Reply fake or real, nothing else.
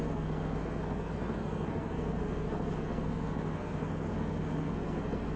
fake